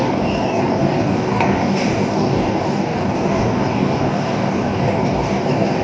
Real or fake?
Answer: fake